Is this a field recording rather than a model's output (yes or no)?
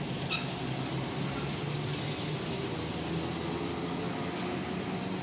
yes